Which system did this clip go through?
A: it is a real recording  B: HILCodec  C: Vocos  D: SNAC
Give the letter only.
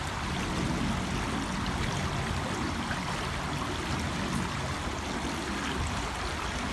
A